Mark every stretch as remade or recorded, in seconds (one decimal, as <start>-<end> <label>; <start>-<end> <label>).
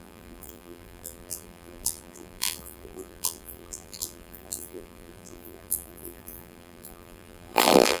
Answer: 0.0-8.0 remade